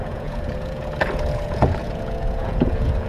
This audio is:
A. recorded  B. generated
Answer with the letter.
B